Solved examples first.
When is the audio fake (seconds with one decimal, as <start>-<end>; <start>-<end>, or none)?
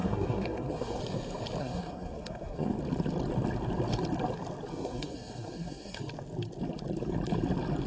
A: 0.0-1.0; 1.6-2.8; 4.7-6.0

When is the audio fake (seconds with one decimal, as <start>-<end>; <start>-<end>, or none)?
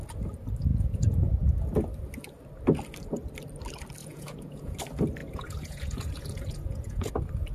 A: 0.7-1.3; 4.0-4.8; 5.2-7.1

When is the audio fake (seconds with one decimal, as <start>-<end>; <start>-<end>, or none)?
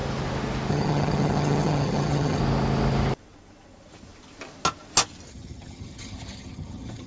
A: 0.7-2.4; 5.3-7.1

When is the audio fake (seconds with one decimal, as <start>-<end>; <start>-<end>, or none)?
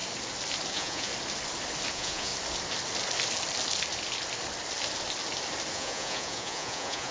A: 0.7-1.1; 1.9-2.3; 5.7-7.1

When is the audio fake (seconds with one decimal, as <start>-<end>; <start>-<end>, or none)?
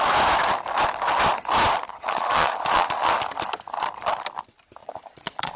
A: 1.9-3.1; 4.8-5.6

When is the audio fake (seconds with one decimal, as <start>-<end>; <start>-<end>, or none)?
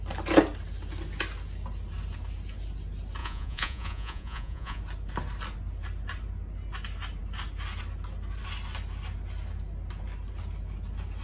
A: 3.2-4.8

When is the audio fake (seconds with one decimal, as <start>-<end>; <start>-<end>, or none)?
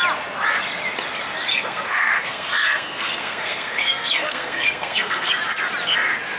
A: 1.5-5.3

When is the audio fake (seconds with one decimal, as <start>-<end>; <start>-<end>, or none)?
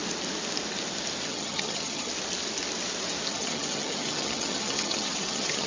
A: 1.3-2.1; 3.3-5.7